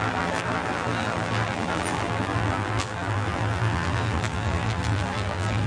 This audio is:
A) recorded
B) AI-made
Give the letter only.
B